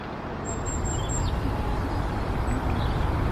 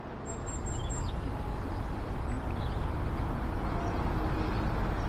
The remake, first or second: first